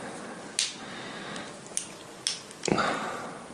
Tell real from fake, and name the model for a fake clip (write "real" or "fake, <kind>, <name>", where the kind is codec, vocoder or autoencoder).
real